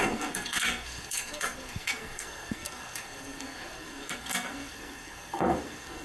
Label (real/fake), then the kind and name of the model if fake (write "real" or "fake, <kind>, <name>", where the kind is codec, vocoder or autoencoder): fake, codec, SNAC